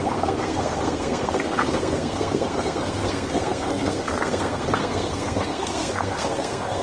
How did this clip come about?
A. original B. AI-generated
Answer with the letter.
B